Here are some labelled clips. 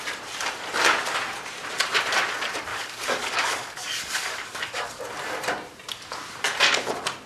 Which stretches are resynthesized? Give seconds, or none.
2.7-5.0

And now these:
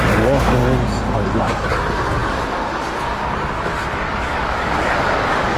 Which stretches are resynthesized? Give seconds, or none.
0.0-0.6; 1.7-5.6

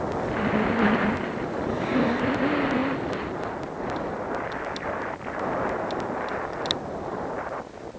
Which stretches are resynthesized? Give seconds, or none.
1.7-2.2